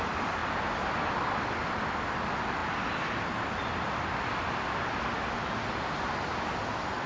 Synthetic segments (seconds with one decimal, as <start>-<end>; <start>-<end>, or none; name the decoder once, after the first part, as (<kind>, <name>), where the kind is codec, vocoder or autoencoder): none